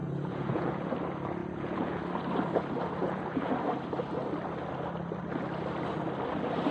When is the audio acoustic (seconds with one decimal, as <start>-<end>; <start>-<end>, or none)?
0.9-1.4; 2.0-3.0; 3.5-6.7